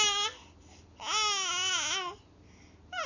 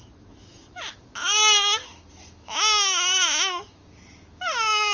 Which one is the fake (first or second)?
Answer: second